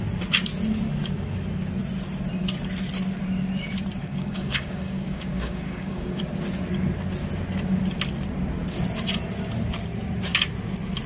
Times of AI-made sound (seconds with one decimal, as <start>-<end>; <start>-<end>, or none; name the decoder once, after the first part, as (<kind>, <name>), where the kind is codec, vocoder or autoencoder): 4.0-6.2 (codec, DAC)